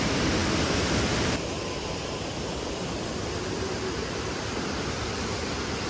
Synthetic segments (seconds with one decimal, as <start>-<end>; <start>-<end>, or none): 0.0-0.4; 3.9-5.9